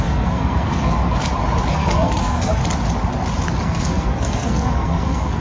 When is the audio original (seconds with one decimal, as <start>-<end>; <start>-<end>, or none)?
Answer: 1.0-1.7; 2.6-3.6